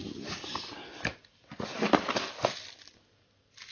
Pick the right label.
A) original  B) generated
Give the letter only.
A